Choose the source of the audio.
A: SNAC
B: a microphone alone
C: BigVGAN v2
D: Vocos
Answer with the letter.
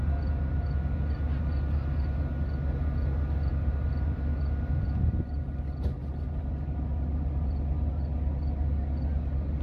B